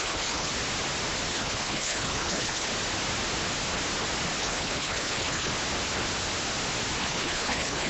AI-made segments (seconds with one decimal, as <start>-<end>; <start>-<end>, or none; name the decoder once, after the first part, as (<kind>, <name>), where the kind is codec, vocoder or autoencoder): 0.0-0.5 (codec, HILCodec); 1.3-2.7; 4.4-5.5; 7.0-7.9